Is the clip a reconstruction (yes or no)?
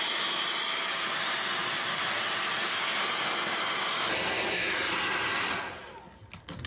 no